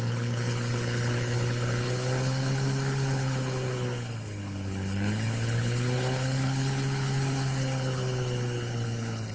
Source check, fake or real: fake